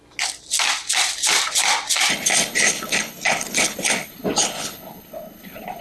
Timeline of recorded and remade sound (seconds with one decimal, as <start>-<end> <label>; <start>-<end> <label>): 0.0-2.1 recorded; 2.1-5.8 remade